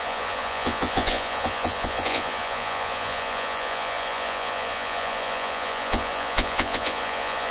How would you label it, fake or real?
fake